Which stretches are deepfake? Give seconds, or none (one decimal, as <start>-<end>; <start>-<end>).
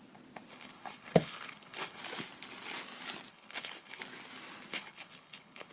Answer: 0.5-2.0; 3.3-4.0; 4.7-5.7